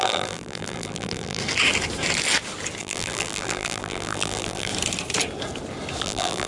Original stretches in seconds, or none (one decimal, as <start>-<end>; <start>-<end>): 1.4-2.8; 4.7-6.0